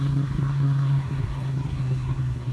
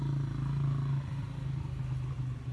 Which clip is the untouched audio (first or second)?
second